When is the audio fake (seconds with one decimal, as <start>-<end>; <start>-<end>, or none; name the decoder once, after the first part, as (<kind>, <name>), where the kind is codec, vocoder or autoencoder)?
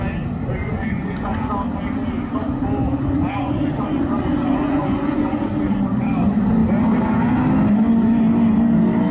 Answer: 0.6-1.5 (vocoder, Vocos); 3.1-5.5